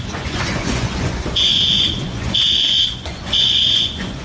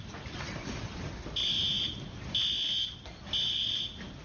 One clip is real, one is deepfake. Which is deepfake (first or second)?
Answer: first